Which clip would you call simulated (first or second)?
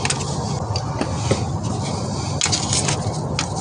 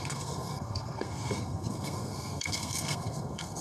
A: second